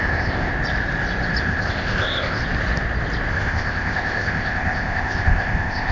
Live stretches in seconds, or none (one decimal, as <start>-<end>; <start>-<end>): 0.5-1.4; 2.4-3.3